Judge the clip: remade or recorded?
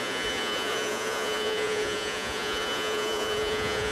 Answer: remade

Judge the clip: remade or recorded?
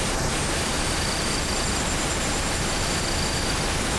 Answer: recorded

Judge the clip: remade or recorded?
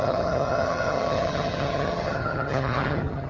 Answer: remade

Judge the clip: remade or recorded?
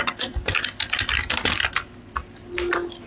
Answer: recorded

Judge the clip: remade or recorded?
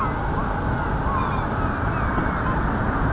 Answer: recorded